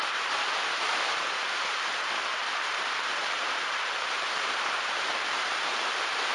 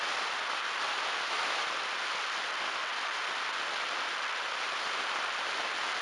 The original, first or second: second